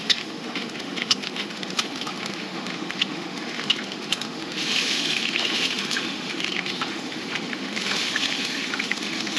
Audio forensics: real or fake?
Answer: fake